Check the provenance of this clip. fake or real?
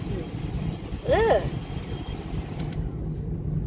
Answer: real